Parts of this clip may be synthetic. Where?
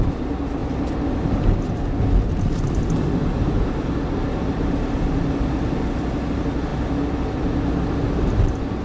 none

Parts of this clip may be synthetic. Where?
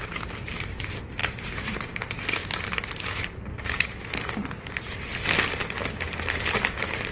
1.2-4.7 (vocoder, BigVGAN v2)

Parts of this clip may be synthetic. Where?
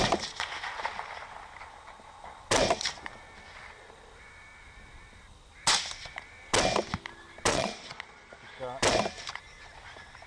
7.5-8.6 (vocoder, Vocos)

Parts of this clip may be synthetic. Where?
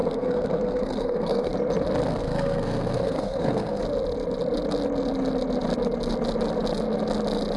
0.0-1.5 (codec, SNAC); 2.1-3.8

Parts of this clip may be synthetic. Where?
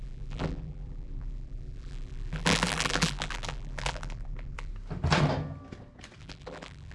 0.0-4.7 (vocoder, BigVGAN v2); 6.2-6.9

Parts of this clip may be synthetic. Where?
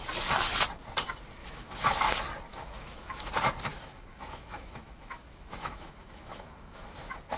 1.4-2.0 (autoencoder, DAC-VAE); 2.5-3.3; 3.7-7.4